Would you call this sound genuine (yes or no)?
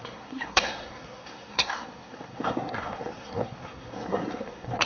no